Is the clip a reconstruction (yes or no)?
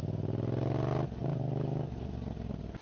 no